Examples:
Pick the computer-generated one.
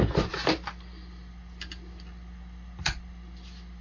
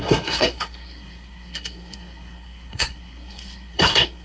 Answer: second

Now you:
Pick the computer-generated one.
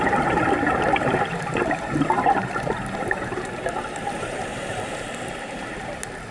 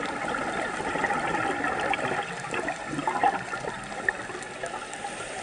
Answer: first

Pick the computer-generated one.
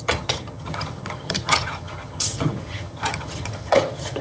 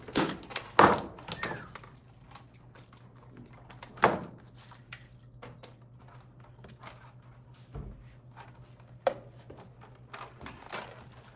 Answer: first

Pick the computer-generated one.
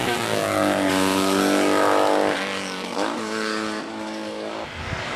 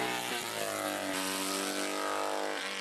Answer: first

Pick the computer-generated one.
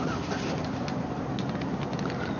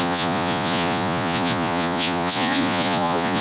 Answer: second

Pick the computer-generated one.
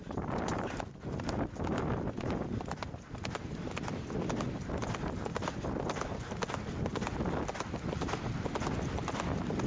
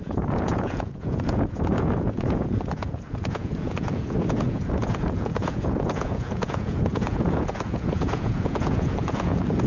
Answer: second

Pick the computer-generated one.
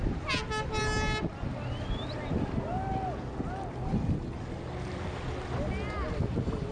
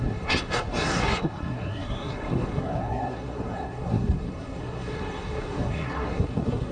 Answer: second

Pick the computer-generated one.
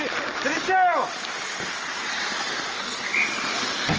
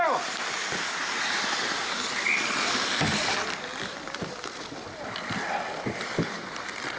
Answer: second